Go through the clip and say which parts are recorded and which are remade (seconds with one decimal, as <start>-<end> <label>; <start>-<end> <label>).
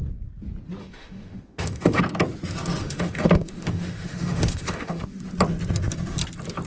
0.0-0.8 recorded; 0.8-2.0 remade; 2.0-2.8 recorded; 2.8-5.2 remade; 5.2-6.7 recorded